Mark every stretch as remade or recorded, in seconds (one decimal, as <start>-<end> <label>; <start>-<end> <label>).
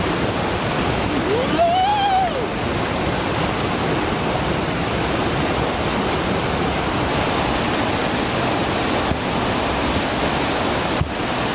0.0-11.5 recorded